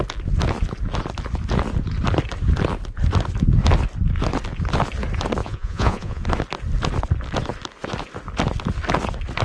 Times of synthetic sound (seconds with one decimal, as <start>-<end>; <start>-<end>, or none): 5.4-6.2